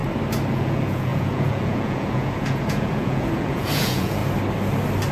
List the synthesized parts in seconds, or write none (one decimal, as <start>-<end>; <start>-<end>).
0.5-4.2